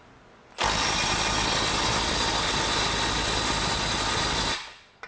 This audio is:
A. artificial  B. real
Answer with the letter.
B